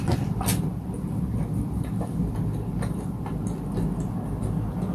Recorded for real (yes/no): yes